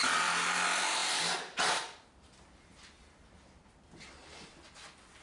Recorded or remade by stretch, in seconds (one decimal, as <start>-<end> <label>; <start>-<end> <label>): 0.0-5.2 recorded